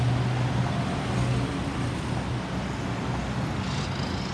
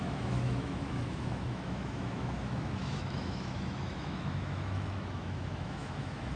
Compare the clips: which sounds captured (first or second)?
first